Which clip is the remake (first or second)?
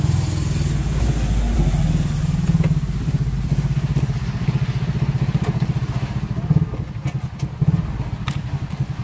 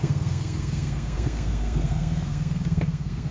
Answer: second